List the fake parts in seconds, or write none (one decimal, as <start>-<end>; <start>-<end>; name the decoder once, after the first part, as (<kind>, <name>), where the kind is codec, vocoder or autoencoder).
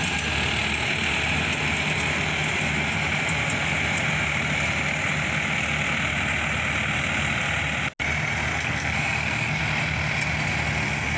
8.5-9.6 (codec, SNAC)